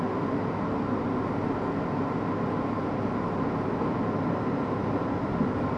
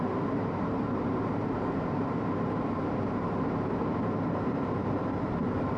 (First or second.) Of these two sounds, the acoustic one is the first